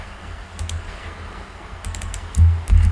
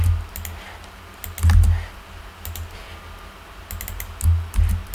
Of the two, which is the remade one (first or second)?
first